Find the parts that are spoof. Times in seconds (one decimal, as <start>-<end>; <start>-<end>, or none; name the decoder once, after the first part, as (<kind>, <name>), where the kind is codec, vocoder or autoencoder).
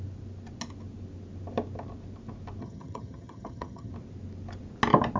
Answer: 2.6-3.9 (vocoder, HiFi-GAN)